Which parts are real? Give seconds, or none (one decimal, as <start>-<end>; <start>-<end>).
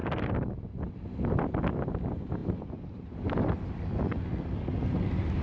0.0-2.4; 3.5-5.4